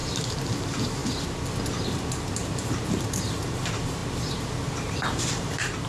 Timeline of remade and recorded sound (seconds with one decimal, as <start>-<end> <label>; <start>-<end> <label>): 0.0-0.6 recorded; 0.6-1.0 remade; 1.0-1.7 recorded; 1.7-5.9 remade